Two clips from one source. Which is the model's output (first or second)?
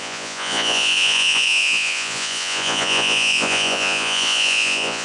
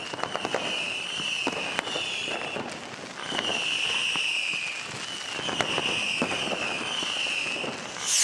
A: first